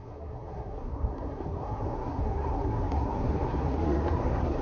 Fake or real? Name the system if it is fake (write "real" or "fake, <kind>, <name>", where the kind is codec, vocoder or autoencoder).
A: fake, codec, SNAC